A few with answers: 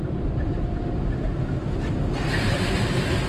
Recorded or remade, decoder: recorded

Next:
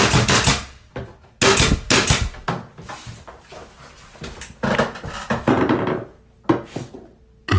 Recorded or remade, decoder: recorded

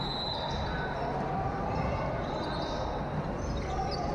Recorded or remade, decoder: recorded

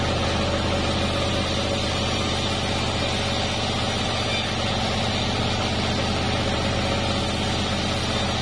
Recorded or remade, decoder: recorded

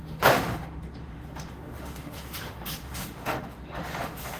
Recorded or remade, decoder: remade, autoencoder, DAC-VAE